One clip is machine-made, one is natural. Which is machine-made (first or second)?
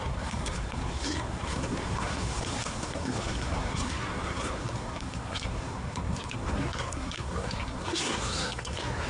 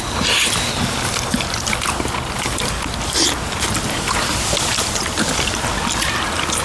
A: first